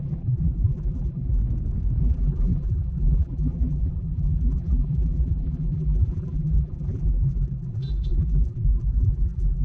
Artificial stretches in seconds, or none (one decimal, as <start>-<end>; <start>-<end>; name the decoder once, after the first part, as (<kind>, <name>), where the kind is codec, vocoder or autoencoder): 0.0-1.4 (vocoder, BigVGAN v2); 2.0-9.6